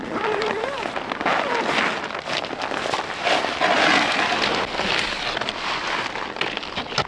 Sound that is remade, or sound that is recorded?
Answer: recorded